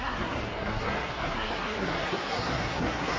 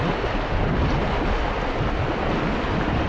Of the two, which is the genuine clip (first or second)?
second